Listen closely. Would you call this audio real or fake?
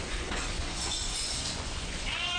fake